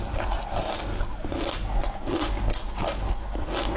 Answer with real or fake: real